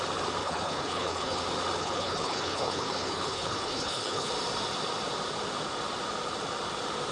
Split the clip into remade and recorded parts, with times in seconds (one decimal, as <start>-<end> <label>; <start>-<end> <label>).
0.0-0.4 recorded; 0.4-1.4 remade; 1.4-1.8 recorded; 1.8-4.3 remade; 4.3-7.1 recorded